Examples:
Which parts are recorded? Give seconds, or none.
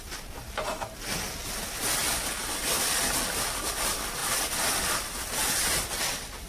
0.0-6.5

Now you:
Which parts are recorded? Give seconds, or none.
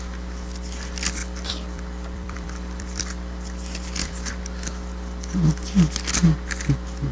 0.0-1.2; 4.4-7.1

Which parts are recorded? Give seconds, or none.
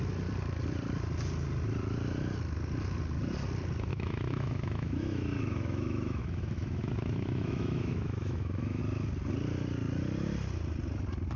0.0-3.9; 8.8-11.4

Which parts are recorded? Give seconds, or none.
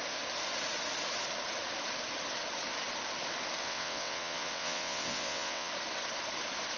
0.0-3.6; 5.7-6.8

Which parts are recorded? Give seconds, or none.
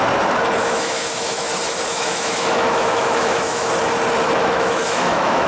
0.0-0.6; 1.5-1.9; 3.7-4.4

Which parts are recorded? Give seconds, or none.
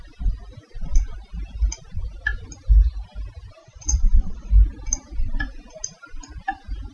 0.0-3.6; 4.5-6.9